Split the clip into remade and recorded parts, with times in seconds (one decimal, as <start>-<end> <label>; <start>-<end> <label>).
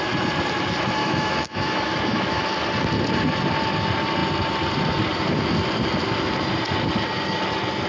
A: 0.0-1.0 recorded; 1.0-2.4 remade; 2.4-7.9 recorded